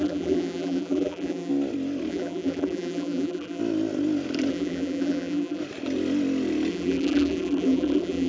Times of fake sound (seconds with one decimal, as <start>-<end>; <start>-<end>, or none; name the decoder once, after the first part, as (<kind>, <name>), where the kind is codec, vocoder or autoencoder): 0.0-1.5 (vocoder, BigVGAN v2); 2.1-3.6; 4.5-5.6; 6.7-8.3